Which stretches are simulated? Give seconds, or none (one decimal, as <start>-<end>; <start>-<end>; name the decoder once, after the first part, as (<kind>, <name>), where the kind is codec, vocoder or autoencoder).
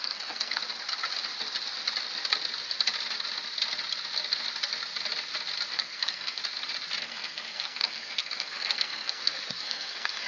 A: 0.0-0.6 (codec, SNAC); 5.7-6.4; 7.0-10.3